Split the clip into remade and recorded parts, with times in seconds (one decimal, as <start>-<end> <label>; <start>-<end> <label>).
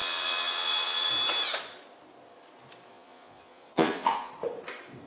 0.0-1.1 remade; 1.1-2.9 recorded; 2.9-4.3 remade; 4.3-5.1 recorded